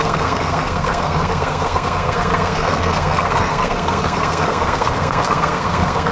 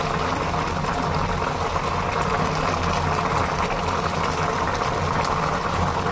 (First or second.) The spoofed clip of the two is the first